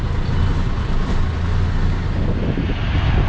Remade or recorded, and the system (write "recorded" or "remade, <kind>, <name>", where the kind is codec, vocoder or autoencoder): recorded